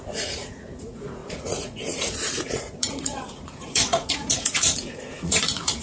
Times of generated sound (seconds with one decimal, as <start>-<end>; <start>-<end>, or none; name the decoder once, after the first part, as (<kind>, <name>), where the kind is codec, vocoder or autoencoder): 0.0-5.8 (vocoder, Vocos)